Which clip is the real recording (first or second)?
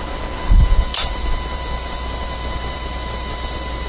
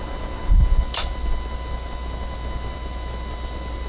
second